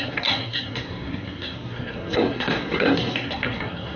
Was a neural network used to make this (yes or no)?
yes